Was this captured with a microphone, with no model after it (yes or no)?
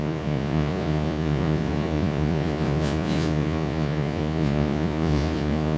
no